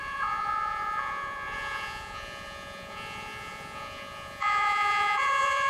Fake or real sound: fake